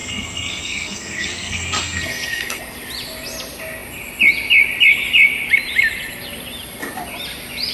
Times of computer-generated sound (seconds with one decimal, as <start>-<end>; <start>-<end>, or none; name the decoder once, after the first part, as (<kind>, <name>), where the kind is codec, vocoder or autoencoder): 0.0-2.6 (codec, SNAC)